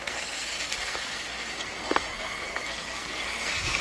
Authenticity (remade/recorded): remade